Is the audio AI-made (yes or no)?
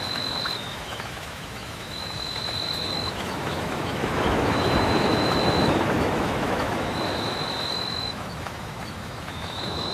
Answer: yes